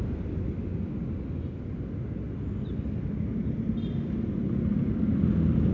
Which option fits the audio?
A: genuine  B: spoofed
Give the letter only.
A